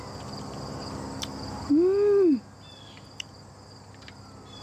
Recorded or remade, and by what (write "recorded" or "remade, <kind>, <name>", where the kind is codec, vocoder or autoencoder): recorded